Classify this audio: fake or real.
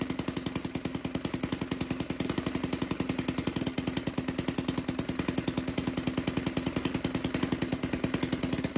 real